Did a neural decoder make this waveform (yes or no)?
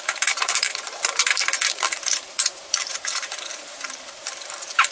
yes